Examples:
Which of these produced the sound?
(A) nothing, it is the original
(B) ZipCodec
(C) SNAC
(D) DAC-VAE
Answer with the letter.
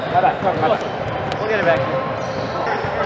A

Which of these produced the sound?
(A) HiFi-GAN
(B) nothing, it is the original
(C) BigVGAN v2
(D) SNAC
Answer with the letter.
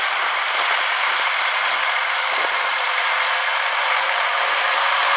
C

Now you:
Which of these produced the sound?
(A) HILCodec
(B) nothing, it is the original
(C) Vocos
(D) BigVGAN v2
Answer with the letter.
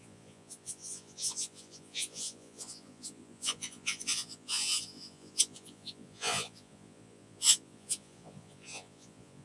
C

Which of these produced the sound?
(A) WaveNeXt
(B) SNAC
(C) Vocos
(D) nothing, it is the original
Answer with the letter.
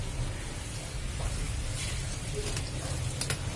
D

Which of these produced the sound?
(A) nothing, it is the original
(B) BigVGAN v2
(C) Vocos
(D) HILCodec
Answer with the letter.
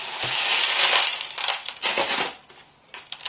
A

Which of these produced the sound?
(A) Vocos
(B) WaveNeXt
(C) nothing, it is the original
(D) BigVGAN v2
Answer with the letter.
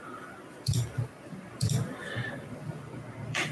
D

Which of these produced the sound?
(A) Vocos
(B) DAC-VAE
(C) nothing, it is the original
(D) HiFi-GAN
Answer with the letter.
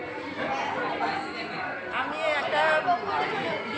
C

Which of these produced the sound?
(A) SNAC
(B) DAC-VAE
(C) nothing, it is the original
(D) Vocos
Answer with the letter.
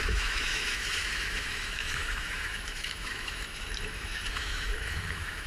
B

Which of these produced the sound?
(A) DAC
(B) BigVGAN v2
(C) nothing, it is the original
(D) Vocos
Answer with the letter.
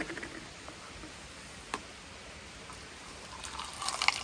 C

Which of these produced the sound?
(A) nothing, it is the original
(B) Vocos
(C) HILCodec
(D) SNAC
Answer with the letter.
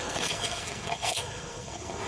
D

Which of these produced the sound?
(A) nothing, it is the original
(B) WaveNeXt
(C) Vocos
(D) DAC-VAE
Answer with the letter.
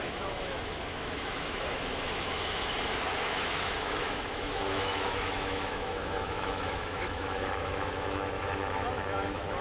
D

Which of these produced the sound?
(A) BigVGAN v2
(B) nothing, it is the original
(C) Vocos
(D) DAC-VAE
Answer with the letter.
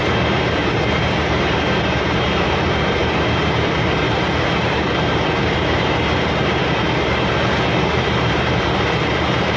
A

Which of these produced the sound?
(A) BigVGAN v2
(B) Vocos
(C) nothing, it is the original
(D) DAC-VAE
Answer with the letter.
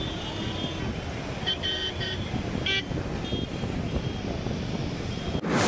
C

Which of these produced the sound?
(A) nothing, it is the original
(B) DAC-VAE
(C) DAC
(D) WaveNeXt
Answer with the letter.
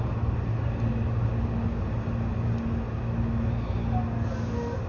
A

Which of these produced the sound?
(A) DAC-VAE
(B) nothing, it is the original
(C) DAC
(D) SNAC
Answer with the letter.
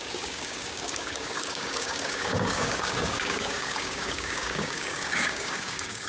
C